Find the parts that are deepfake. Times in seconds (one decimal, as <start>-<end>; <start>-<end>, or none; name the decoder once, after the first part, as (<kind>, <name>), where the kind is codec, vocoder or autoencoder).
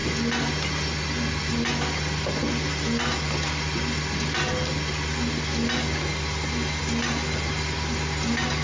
none